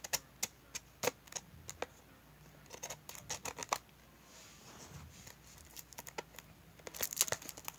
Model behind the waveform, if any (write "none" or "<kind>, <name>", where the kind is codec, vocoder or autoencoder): none